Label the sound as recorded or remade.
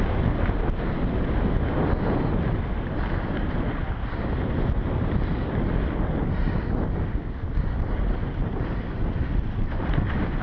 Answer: recorded